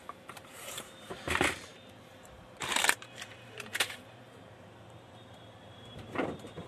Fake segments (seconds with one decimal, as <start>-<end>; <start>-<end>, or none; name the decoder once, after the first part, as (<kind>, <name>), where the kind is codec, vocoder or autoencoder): 0.0-6.7 (vocoder, BigVGAN v2)